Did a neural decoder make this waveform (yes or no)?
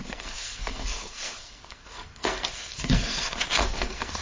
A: yes